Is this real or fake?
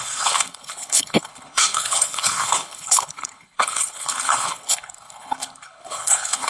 fake